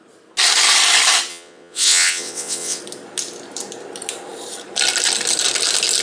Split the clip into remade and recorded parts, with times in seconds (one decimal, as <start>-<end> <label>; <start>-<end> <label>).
0.0-1.3 recorded; 1.3-2.8 remade; 2.8-6.0 recorded